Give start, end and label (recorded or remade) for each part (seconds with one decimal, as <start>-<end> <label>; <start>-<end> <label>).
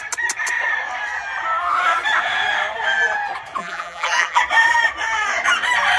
0.0-3.6 recorded; 3.6-4.4 remade; 4.4-6.0 recorded